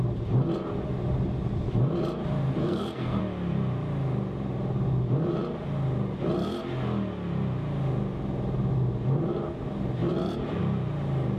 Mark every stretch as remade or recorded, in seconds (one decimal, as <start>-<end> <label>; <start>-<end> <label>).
0.0-2.6 recorded; 2.6-3.2 remade; 3.2-11.4 recorded